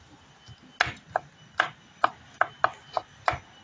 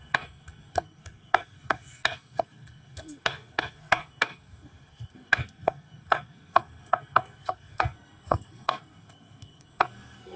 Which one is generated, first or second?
second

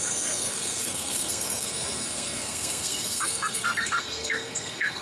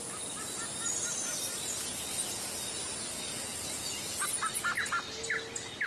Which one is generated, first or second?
first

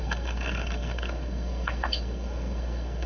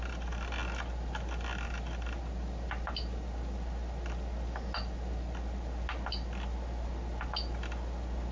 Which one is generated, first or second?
first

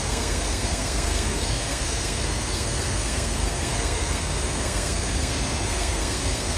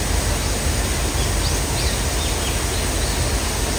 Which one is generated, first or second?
first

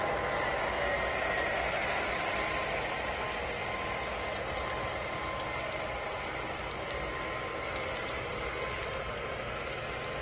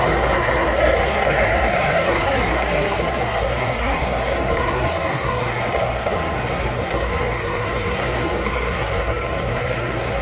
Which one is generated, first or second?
second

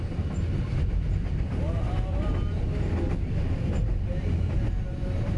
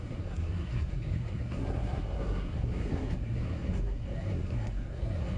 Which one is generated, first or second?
second